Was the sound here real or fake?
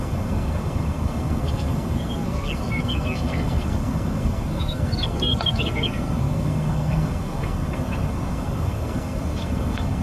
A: fake